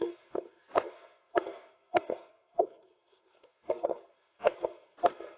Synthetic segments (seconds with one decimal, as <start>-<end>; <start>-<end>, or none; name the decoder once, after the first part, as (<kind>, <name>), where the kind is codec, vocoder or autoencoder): 0.0-5.4 (codec, SNAC)